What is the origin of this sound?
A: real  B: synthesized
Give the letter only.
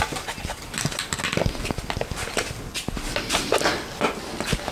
A